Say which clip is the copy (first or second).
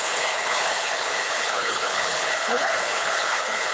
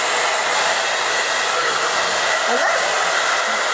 first